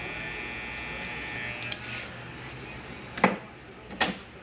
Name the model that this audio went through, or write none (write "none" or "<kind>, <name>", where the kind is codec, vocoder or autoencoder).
none